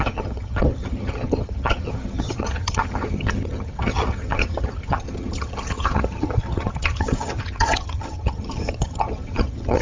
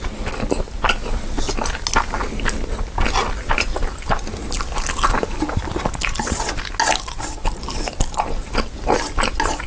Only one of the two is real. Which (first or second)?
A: second